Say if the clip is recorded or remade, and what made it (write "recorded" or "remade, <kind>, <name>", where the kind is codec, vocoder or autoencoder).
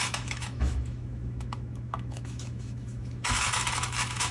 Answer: remade, autoencoder, DAC-VAE